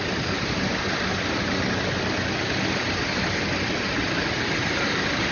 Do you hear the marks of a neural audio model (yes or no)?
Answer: no